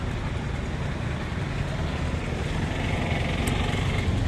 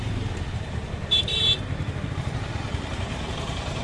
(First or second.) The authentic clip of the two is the first